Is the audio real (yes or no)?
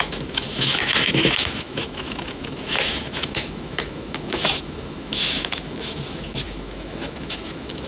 no